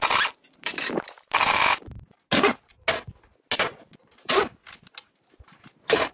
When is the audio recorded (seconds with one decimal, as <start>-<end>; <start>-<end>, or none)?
1.6-5.3